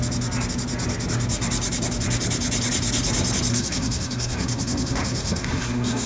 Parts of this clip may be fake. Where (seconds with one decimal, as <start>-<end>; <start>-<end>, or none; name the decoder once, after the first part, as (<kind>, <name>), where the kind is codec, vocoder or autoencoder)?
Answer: 3.5-6.1 (codec, SNAC)

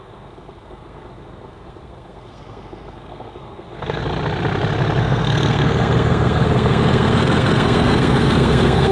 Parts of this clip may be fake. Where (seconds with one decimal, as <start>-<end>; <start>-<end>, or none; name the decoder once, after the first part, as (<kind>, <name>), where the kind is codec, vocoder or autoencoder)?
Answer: 0.0-4.0 (codec, SNAC); 5.0-8.9

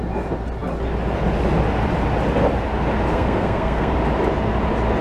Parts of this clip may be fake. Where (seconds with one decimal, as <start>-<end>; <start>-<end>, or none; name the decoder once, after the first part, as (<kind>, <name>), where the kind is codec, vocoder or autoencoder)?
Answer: 3.1-3.9 (codec, SNAC)

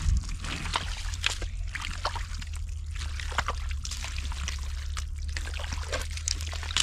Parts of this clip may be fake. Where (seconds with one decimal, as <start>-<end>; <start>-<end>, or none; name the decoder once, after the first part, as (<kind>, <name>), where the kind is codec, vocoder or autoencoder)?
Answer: none